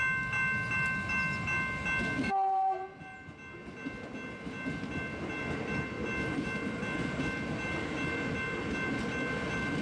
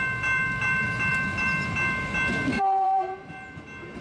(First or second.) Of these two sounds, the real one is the first